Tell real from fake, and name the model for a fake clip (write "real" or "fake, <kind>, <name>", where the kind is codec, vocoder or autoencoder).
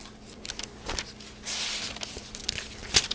real